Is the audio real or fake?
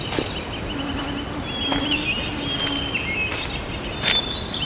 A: real